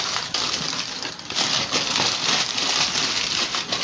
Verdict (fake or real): real